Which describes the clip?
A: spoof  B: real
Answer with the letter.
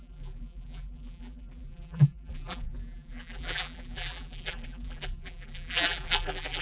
A